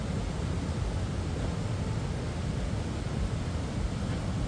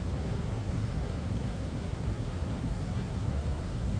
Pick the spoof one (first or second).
second